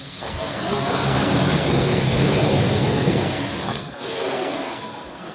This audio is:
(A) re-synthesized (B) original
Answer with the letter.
A